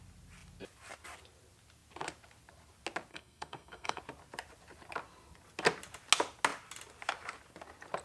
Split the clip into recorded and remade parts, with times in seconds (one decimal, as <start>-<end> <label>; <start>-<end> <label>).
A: 0.0-3.1 recorded; 3.1-4.0 remade; 4.0-8.0 recorded